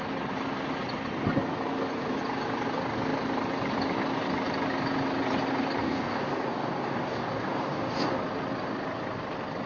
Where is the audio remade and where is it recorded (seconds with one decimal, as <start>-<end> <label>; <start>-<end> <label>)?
0.0-5.8 recorded; 5.8-8.1 remade; 8.1-9.7 recorded